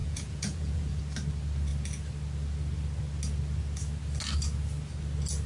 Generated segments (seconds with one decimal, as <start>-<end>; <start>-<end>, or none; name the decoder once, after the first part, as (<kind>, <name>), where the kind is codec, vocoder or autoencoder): 0.0-1.0 (vocoder, Vocos)